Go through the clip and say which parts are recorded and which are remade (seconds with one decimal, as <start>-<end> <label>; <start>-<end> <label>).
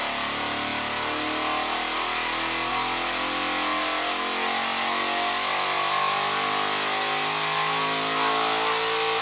0.0-9.2 recorded